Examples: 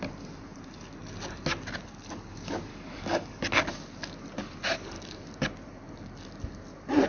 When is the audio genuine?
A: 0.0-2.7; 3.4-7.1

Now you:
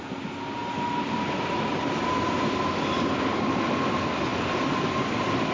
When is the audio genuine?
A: 0.0-5.5